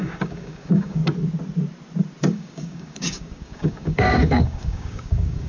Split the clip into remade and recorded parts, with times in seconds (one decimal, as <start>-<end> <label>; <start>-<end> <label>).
0.0-1.0 remade; 1.0-2.2 recorded; 2.2-5.5 remade

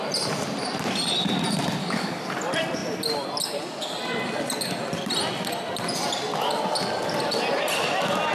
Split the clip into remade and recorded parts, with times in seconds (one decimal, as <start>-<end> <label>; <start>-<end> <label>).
0.0-1.8 recorded; 1.8-2.3 remade; 2.3-8.3 recorded

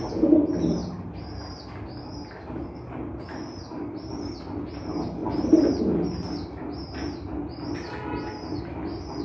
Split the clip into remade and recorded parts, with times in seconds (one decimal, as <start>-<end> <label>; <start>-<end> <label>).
0.0-9.2 recorded

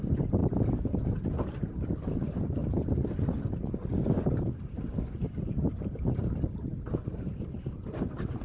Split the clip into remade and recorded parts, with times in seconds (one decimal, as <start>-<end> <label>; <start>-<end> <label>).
0.0-8.4 recorded

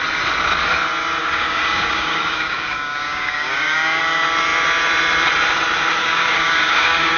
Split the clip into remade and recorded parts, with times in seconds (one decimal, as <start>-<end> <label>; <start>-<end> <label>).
0.0-1.2 recorded; 1.2-4.0 remade; 4.0-6.0 recorded; 6.0-7.2 remade

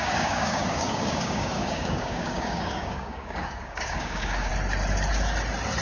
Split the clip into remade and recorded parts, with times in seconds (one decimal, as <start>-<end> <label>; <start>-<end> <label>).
0.0-4.5 remade; 4.5-5.8 recorded